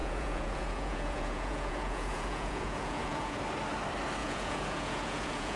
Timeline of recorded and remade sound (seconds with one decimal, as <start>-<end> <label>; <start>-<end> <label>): 0.0-3.4 remade; 3.4-4.2 recorded; 4.2-5.6 remade